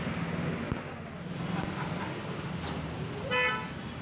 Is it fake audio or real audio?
real